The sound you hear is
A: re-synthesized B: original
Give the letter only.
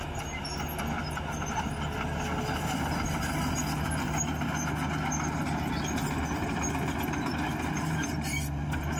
B